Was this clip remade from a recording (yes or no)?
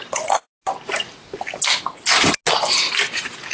no